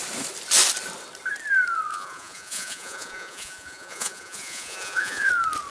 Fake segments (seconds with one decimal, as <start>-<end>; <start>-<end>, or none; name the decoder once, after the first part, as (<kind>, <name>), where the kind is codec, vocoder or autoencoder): 1.9-5.3 (vocoder, Vocos)